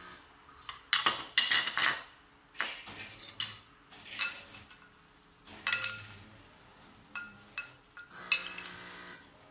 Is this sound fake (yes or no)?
no